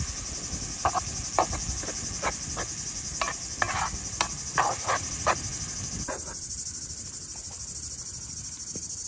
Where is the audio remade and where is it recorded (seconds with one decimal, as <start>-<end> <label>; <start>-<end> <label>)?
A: 0.0-9.1 recorded